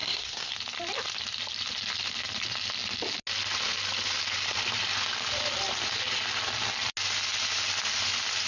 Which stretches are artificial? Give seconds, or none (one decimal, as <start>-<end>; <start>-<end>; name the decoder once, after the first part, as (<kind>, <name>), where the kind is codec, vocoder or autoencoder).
0.0-0.5 (codec, SNAC)